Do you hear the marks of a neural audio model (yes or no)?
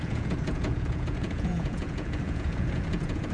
yes